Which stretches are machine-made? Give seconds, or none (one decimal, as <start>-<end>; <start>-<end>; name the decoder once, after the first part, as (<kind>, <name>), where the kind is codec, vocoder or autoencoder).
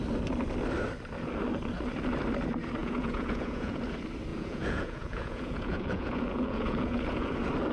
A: 2.8-3.8 (vocoder, Vocos); 4.3-7.3